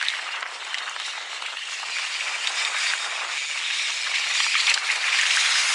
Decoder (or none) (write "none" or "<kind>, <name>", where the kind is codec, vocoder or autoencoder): none